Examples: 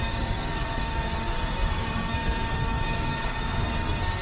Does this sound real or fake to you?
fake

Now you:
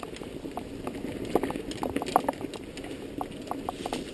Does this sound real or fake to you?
real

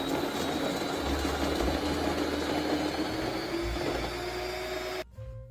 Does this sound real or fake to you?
real